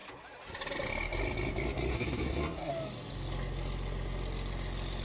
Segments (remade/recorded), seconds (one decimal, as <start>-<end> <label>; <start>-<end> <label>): 0.0-1.9 recorded; 1.9-2.7 remade; 2.7-5.0 recorded